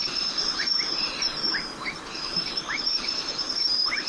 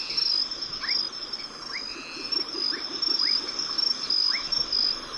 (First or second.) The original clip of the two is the second